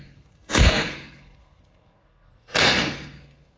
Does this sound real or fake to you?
fake